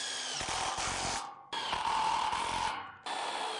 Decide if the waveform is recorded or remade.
recorded